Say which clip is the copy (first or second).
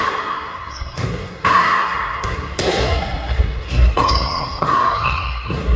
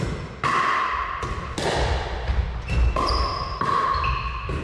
first